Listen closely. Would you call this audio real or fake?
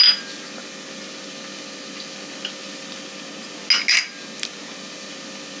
real